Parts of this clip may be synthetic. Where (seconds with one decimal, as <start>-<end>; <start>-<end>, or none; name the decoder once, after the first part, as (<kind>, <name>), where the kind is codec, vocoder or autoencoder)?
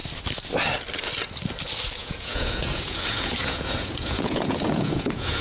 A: 2.0-5.4 (vocoder, Vocos)